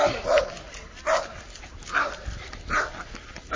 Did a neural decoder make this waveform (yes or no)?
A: no